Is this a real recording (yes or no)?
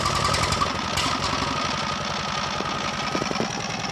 yes